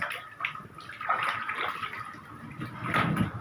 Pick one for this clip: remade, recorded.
recorded